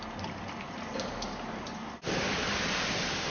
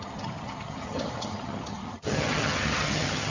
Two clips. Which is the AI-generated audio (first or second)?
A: second